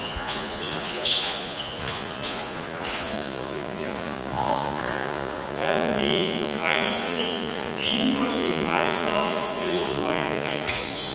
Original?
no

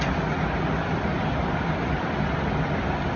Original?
yes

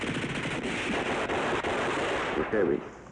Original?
yes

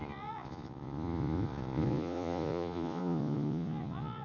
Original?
no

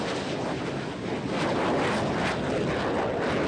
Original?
yes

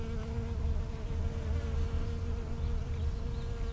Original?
yes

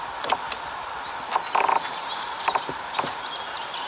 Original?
yes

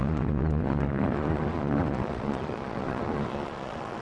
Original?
no